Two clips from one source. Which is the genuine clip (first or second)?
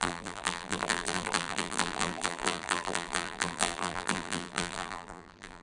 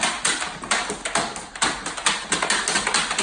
second